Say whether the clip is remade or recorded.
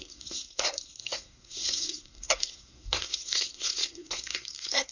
remade